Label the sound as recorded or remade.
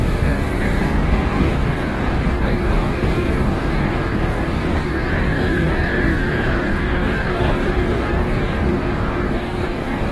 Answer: remade